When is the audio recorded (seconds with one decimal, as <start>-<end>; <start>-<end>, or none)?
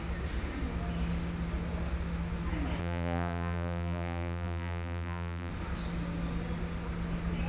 0.0-2.8; 5.5-7.5